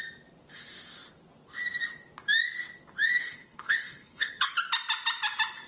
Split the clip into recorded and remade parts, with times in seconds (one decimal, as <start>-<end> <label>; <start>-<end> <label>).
0.0-3.2 recorded; 3.2-4.5 remade; 4.5-5.7 recorded